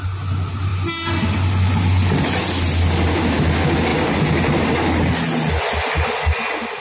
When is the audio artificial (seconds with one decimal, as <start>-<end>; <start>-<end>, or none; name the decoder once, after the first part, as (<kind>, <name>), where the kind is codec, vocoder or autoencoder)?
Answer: none